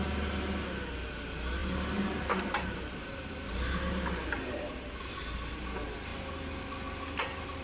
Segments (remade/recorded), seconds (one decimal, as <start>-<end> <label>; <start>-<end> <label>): 0.0-1.6 recorded; 1.6-5.5 remade; 5.5-7.6 recorded